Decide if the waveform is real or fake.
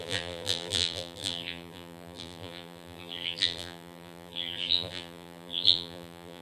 fake